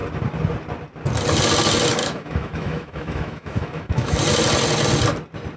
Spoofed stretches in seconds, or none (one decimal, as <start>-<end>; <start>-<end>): 2.0-4.2